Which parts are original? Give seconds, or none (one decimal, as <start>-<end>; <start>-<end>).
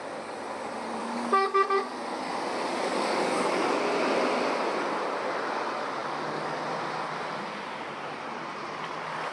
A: 0.0-1.0; 2.3-2.9; 3.8-6.0; 6.6-9.3